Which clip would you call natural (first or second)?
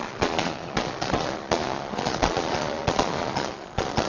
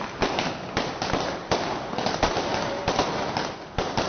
second